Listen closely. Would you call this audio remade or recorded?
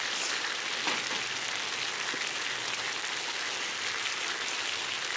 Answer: recorded